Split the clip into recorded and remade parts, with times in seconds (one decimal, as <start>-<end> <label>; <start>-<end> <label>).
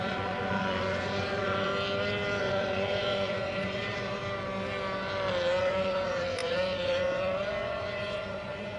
0.0-1.7 remade; 1.7-2.4 recorded; 2.4-4.2 remade; 4.2-5.6 recorded; 5.6-8.8 remade